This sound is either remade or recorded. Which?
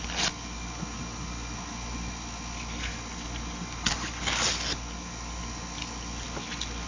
recorded